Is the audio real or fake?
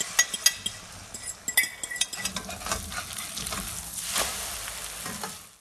real